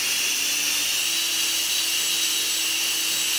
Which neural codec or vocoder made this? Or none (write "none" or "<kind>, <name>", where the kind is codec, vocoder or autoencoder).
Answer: none